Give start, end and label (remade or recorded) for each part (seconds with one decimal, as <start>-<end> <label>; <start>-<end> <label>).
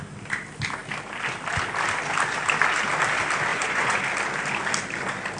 0.0-3.5 recorded; 3.5-4.0 remade; 4.0-5.4 recorded